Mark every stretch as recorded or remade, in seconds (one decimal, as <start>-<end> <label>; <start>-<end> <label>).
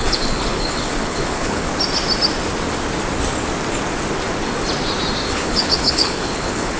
0.0-1.7 remade; 1.7-5.3 recorded; 5.3-6.8 remade